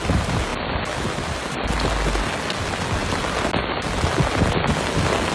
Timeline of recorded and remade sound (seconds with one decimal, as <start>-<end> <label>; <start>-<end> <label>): 0.0-5.3 recorded